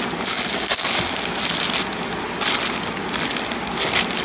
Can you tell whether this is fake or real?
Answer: real